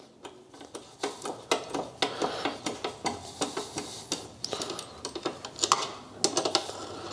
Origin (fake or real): real